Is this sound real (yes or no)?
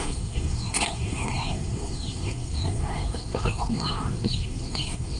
no